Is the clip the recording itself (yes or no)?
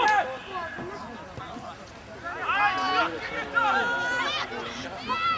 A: yes